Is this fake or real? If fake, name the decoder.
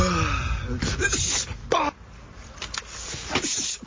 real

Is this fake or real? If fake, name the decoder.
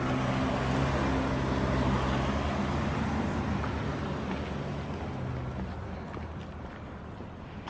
real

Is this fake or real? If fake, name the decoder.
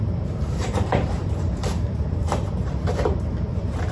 fake, vocoder, BigVGAN v2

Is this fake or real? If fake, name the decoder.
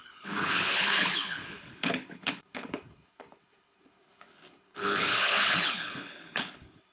fake, codec, HILCodec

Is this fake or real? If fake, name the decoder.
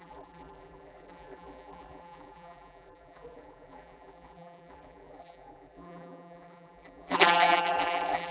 fake, vocoder, BigVGAN v2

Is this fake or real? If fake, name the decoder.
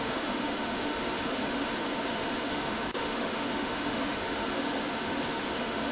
fake, autoencoder, DAC-VAE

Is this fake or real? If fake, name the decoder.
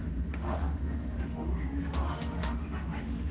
fake, autoencoder, DAC-VAE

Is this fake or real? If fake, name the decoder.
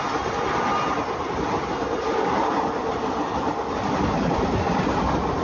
real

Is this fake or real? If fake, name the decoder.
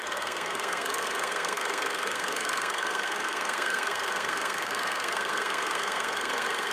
fake, codec, SNAC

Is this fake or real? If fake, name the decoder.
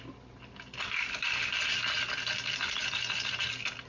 real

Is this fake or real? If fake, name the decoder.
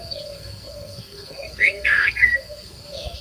fake, codec, SNAC